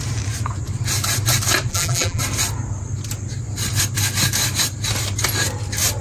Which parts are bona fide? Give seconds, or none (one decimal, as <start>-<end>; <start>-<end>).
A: 0.0-1.7; 2.2-6.0

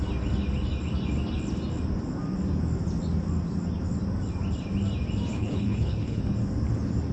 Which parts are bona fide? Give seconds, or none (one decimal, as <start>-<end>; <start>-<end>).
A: 0.0-5.3; 6.2-7.1

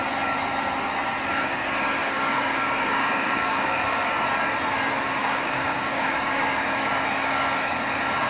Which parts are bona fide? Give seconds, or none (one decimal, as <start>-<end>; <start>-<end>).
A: 0.0-2.0; 4.1-5.2; 6.9-8.3

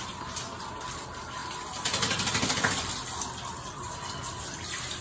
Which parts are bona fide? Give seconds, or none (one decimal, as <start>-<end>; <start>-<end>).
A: 0.0-5.0